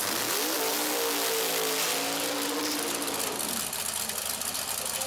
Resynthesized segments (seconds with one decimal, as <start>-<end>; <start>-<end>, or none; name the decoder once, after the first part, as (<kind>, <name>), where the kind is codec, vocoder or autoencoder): none